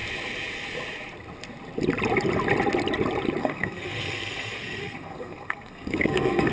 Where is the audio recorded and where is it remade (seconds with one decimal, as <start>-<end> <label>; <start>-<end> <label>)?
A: 0.0-3.4 recorded; 3.4-6.5 remade